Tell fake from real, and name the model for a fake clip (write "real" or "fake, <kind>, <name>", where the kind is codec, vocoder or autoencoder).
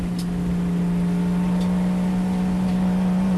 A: real